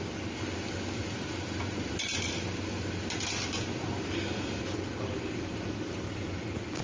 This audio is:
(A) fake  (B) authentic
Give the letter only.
B